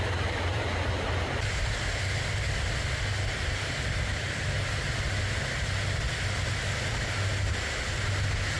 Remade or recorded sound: recorded